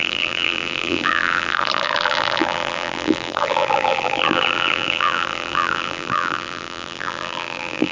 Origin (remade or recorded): remade